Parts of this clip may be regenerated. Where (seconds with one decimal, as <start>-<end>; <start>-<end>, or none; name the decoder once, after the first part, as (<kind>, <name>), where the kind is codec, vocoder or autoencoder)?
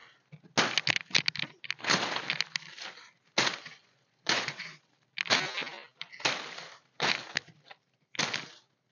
3.8-4.9 (vocoder, Vocos)